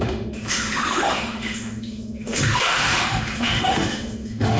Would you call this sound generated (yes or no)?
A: yes